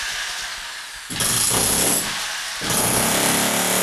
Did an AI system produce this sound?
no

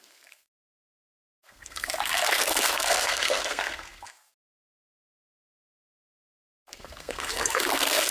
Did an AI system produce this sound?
yes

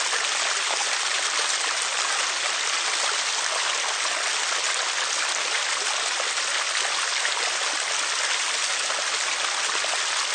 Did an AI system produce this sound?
no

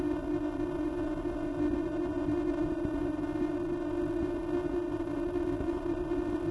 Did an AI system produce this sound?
no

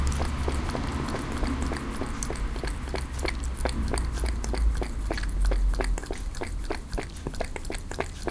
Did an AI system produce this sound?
no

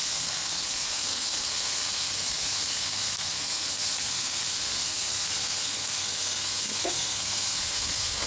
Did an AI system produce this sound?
yes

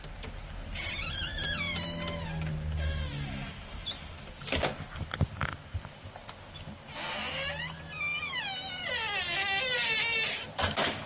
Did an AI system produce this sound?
no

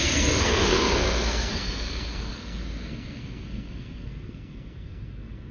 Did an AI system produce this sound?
yes